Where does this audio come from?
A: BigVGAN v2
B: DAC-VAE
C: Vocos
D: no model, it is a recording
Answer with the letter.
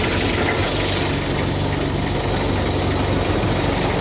D